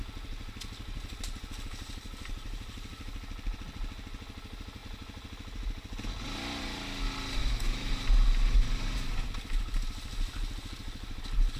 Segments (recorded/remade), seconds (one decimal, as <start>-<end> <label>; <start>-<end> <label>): 0.0-7.4 recorded; 7.4-7.9 remade; 7.9-11.6 recorded